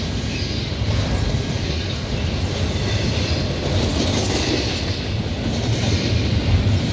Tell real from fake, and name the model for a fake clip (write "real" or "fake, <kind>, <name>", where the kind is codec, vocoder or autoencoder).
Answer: real